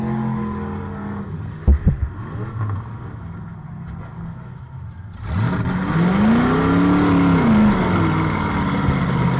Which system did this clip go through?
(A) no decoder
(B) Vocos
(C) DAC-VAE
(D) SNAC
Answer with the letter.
A